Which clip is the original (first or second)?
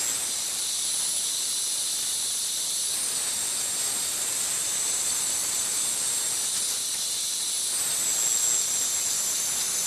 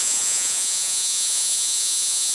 first